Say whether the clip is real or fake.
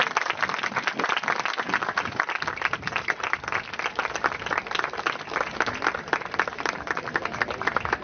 real